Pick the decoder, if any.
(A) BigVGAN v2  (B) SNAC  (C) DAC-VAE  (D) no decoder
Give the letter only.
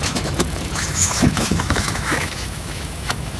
C